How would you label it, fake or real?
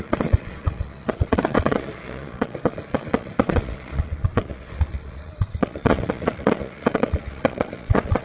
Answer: fake